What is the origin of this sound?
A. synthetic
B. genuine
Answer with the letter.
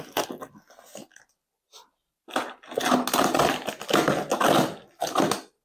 B